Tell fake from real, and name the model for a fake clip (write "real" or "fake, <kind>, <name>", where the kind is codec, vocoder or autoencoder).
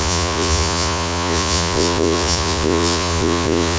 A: fake, vocoder, Vocos